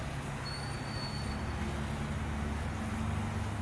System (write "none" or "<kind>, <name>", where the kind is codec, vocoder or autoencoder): none